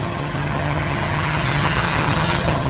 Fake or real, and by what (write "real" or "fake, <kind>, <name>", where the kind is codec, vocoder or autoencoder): fake, vocoder, HiFi-GAN